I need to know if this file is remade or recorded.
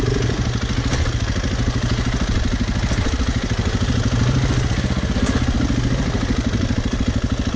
recorded